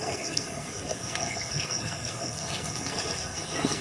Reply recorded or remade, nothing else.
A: remade